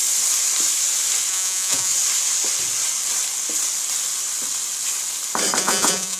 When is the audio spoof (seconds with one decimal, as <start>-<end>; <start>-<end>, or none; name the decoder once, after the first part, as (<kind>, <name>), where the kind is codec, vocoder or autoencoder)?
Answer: 1.3-1.9 (vocoder, Vocos); 5.6-6.2